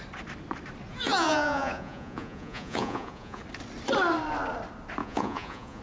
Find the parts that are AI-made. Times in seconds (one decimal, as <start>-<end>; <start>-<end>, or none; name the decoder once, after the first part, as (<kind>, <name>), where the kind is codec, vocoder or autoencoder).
0.9-3.4 (vocoder, Vocos); 5.0-5.8